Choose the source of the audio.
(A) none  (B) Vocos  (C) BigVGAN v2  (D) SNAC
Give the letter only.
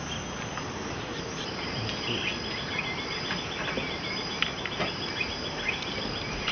A